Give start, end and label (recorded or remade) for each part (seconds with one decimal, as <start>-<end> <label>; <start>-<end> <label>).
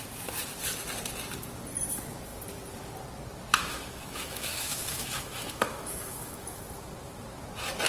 0.0-3.5 recorded; 3.5-6.6 remade; 6.6-7.9 recorded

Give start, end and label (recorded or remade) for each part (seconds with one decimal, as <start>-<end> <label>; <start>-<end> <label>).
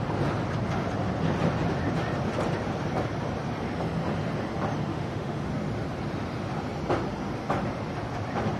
0.0-4.9 recorded; 4.9-5.5 remade; 5.5-8.6 recorded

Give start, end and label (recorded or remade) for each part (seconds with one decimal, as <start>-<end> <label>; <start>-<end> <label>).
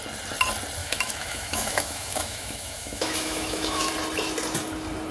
0.0-0.8 recorded; 0.8-3.9 remade; 3.9-5.1 recorded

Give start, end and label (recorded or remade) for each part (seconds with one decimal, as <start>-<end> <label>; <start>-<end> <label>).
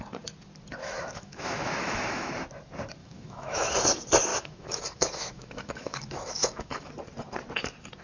0.0-0.8 recorded; 0.8-2.3 remade; 2.3-3.0 recorded; 3.0-3.7 remade; 3.7-4.3 recorded; 4.3-6.9 remade; 6.9-8.0 recorded